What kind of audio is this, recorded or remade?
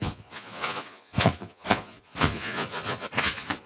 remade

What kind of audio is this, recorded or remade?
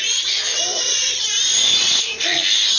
recorded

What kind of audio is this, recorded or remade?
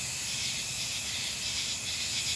recorded